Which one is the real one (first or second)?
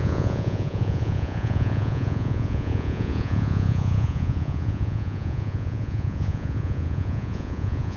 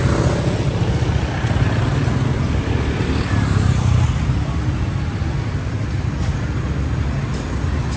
second